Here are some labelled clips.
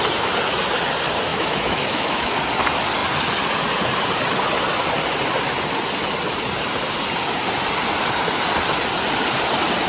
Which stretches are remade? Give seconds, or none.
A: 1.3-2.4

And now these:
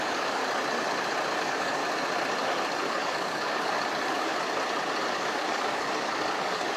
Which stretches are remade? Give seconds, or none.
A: 0.0-0.4; 1.4-1.8; 2.9-4.3; 5.0-6.8